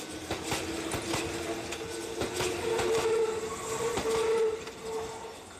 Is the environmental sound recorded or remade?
recorded